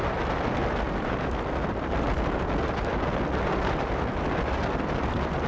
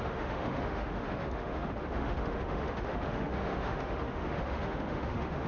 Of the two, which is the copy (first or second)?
second